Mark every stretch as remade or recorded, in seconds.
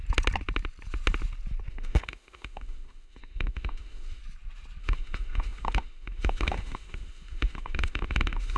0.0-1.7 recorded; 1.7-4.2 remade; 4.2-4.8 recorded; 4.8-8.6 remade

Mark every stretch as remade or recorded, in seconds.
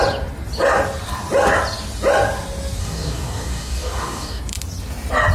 0.0-2.8 recorded; 2.8-4.4 remade; 4.4-5.3 recorded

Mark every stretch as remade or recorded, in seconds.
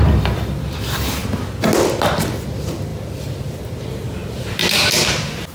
0.0-5.5 recorded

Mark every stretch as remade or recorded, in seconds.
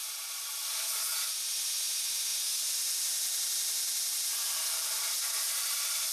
0.0-6.1 recorded